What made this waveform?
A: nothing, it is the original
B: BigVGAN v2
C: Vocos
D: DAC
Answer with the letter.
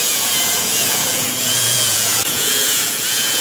C